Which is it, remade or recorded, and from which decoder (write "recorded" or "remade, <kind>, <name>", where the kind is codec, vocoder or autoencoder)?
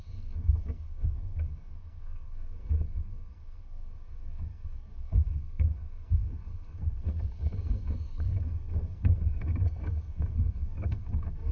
remade, codec, SNAC